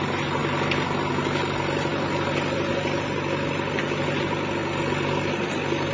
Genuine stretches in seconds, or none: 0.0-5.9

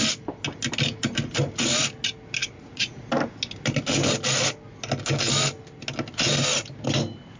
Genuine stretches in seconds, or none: 0.0-2.4; 3.0-7.4

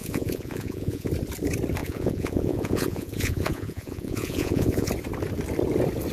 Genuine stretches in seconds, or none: 1.1-1.8; 4.9-6.1

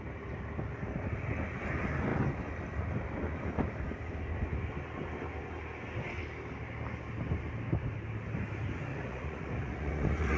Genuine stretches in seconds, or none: 0.0-8.9